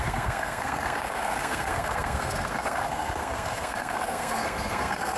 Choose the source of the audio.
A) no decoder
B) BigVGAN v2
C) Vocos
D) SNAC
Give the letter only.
D